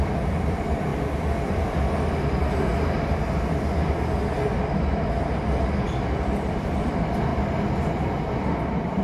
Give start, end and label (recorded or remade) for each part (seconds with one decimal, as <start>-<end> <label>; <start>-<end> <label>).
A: 0.0-0.9 remade; 0.9-1.5 recorded; 1.5-2.7 remade; 2.7-4.6 recorded; 4.6-7.3 remade; 7.3-8.6 recorded; 8.6-9.0 remade